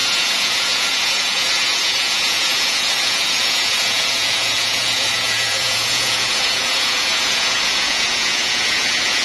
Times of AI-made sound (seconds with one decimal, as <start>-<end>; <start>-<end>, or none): 0.0-9.2